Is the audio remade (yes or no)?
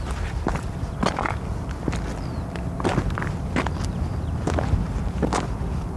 no